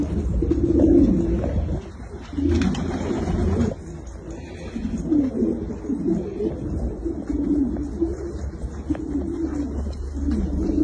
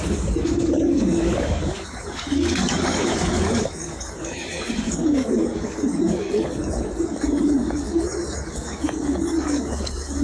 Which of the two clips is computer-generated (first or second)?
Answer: second